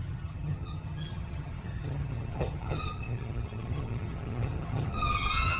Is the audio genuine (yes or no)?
no